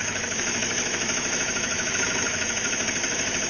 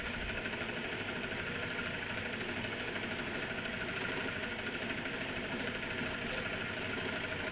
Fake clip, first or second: first